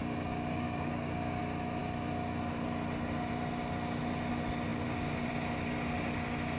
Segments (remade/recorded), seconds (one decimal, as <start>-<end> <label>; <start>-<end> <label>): 0.0-1.4 remade; 1.4-6.6 recorded